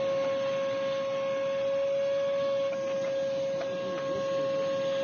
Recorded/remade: recorded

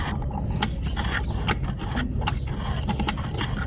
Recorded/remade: recorded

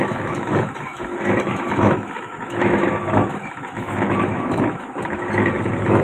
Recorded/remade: remade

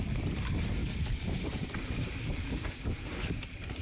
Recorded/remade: recorded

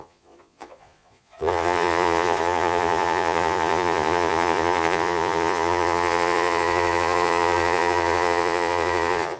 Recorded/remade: remade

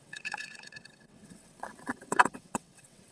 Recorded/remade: remade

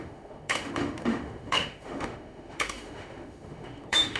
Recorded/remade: remade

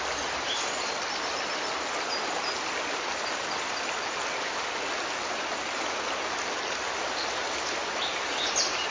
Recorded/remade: recorded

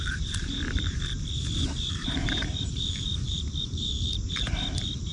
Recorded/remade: remade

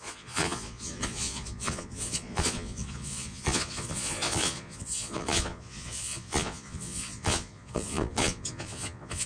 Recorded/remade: remade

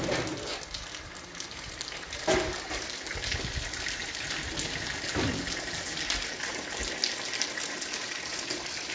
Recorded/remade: recorded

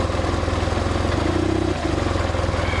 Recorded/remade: recorded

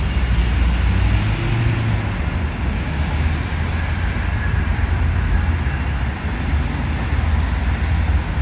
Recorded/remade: recorded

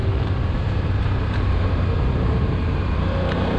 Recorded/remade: remade